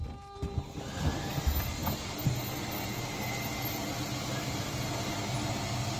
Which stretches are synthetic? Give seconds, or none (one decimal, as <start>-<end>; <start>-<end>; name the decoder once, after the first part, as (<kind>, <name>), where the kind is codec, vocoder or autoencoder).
none